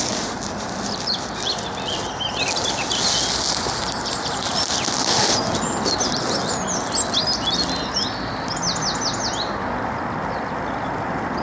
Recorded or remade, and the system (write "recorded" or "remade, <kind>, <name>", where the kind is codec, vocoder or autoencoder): recorded